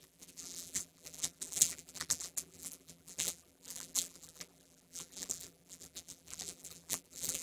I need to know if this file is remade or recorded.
remade